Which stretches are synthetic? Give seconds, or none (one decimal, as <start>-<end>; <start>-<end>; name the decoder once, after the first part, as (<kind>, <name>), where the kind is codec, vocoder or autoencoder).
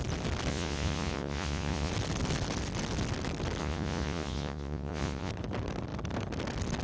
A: 0.5-1.9 (vocoder, Vocos); 3.6-5.3